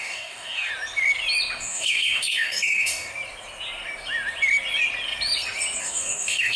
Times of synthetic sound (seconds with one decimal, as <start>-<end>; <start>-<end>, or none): 0.0-0.7; 1.6-3.1; 5.8-6.6